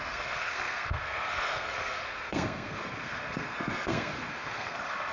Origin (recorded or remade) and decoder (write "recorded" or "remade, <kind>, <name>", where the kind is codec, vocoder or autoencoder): remade, codec, SNAC